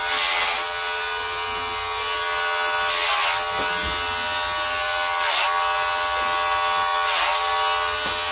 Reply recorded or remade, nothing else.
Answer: recorded